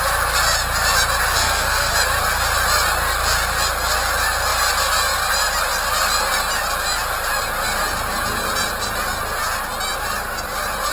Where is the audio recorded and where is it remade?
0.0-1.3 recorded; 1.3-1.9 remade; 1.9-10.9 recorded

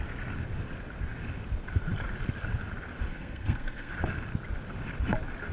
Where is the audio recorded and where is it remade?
0.0-3.1 recorded; 3.1-3.9 remade; 3.9-5.5 recorded

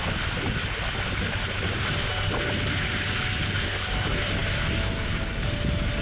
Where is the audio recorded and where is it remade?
0.0-6.0 recorded

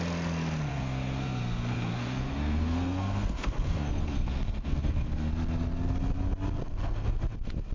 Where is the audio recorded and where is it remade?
0.0-0.7 recorded; 0.7-5.3 remade; 5.3-6.6 recorded; 6.6-7.1 remade; 7.1-7.7 recorded